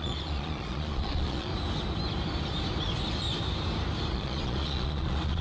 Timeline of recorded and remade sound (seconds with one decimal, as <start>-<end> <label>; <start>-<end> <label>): 0.0-1.5 remade; 1.5-4.1 recorded; 4.1-5.4 remade